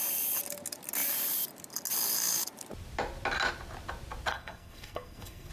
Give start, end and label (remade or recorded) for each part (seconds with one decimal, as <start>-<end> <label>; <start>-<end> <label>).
0.0-4.3 recorded; 4.3-5.5 remade